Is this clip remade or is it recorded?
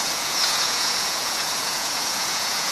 remade